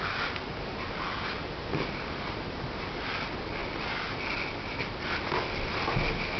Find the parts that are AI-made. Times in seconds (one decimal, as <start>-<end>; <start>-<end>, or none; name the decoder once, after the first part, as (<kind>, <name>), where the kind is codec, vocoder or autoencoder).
none